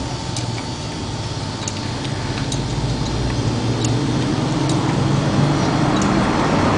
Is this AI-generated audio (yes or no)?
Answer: no